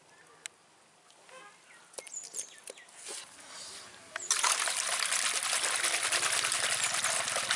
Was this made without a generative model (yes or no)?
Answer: yes